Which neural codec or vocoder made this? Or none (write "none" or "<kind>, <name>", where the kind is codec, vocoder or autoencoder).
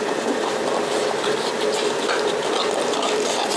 none